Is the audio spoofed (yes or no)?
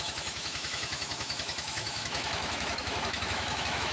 yes